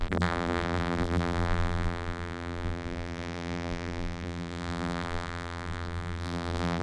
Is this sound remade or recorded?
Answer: remade